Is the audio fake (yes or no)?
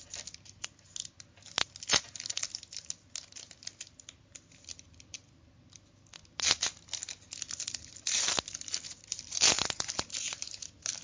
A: no